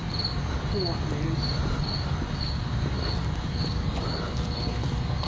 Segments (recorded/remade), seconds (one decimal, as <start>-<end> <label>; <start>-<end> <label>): 0.0-5.3 recorded